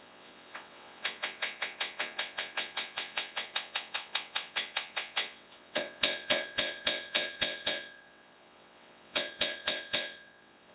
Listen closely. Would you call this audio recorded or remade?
remade